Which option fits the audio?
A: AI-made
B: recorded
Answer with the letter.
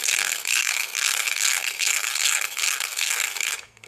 A